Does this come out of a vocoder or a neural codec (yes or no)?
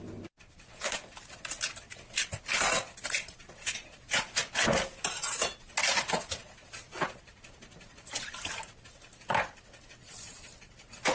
no